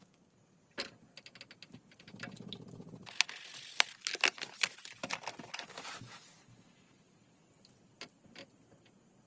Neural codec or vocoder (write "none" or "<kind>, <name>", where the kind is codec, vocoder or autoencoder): none